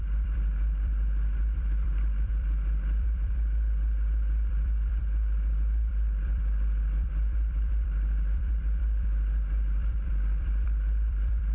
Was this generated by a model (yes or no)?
yes